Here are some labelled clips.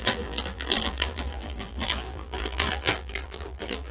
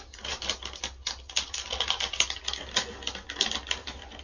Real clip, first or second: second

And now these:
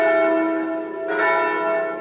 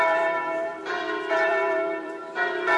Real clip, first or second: first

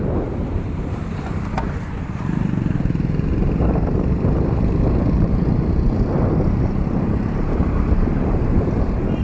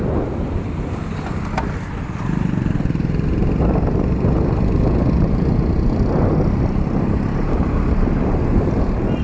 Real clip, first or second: second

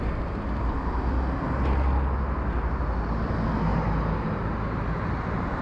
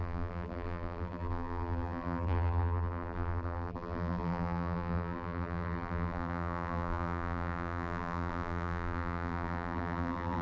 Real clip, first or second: first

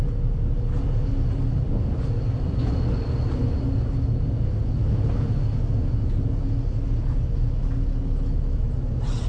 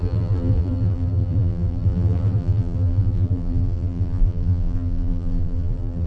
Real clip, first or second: first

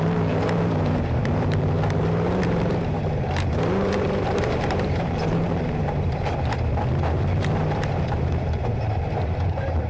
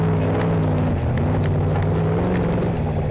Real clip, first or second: second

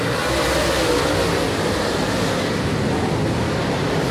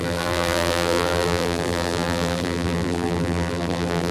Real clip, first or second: first